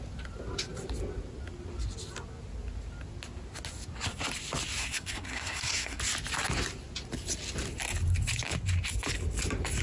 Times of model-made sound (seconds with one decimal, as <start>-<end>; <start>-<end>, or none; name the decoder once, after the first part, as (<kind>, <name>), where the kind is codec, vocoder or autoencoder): 4.8-6.0 (codec, SNAC)